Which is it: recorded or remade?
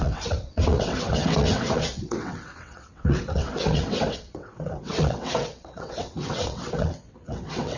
remade